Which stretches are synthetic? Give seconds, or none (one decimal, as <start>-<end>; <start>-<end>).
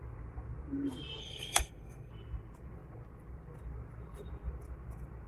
1.2-2.1